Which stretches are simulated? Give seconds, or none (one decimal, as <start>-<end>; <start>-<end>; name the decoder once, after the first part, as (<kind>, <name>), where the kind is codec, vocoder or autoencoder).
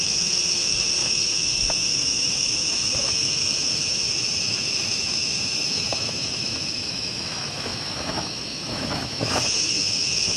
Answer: 0.0-10.4 (autoencoder, DAC-VAE)